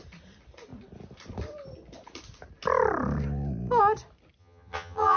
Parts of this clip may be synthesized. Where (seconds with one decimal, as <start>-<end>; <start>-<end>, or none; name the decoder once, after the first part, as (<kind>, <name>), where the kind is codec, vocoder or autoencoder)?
4.4-5.2 (vocoder, HiFi-GAN)